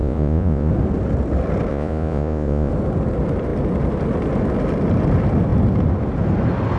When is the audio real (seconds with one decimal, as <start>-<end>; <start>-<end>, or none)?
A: 0.7-1.7; 2.7-6.8